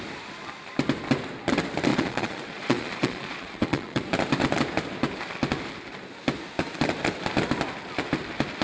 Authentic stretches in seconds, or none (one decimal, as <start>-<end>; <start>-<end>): 0.0-1.9; 4.0-8.6